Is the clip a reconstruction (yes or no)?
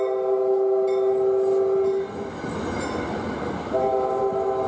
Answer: no